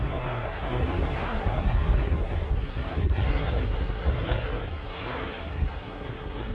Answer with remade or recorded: remade